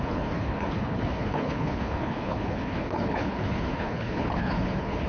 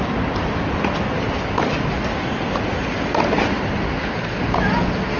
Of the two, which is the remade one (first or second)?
first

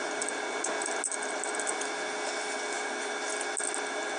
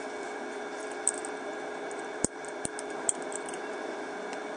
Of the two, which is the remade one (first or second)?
second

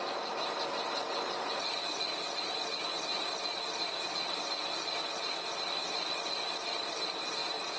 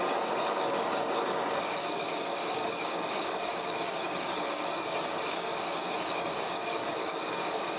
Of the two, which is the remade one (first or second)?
second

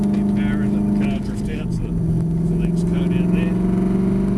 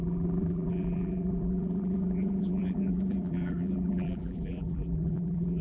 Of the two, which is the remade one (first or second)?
second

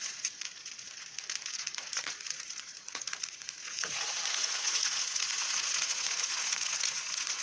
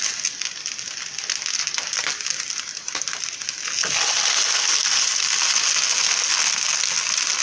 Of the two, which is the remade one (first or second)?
first